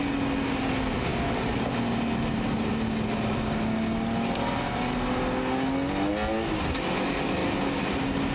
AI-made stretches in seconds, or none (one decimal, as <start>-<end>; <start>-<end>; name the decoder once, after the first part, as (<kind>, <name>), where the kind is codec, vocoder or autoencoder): none